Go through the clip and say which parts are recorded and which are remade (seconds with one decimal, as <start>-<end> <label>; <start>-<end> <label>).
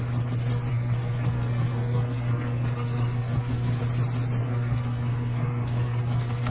0.0-0.7 recorded; 0.7-3.8 remade; 3.8-4.4 recorded; 4.4-6.5 remade